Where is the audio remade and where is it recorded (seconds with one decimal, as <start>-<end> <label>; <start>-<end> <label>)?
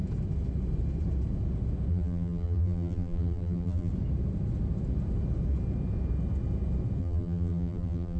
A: 0.0-1.9 recorded; 1.9-3.9 remade; 3.9-7.0 recorded; 7.0-8.2 remade